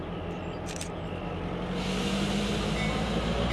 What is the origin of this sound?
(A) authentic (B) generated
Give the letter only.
A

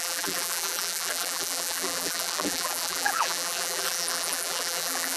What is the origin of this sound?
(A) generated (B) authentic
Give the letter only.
A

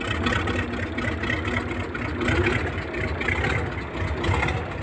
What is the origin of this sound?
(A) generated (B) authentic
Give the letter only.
B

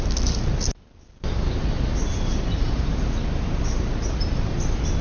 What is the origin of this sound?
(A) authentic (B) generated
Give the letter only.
A